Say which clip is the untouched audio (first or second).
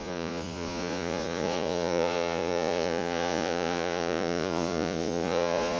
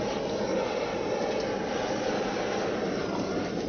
second